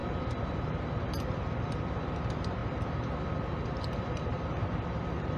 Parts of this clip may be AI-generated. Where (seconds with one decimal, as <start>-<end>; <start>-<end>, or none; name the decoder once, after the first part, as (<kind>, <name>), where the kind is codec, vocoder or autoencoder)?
none